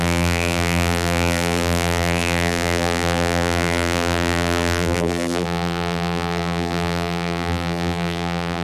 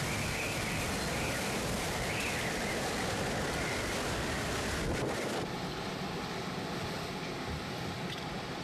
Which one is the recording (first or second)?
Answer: second